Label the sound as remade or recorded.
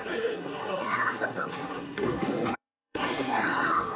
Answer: remade